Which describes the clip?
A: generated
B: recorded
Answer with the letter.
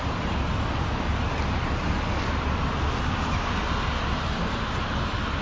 B